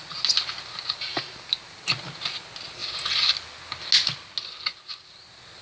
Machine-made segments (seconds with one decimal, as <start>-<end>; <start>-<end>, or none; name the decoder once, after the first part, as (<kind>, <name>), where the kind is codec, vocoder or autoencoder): none